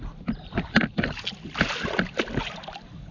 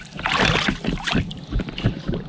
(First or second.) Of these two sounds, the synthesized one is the second